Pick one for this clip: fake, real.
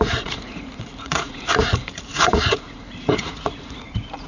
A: fake